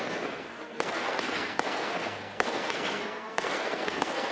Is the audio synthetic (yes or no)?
yes